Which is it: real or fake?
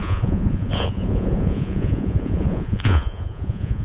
fake